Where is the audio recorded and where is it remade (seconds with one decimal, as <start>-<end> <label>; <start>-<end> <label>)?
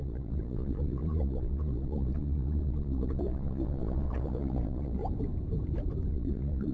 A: 0.0-5.0 remade; 5.0-6.1 recorded; 6.1-6.7 remade